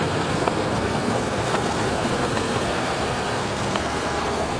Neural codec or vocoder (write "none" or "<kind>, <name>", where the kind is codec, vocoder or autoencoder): codec, SNAC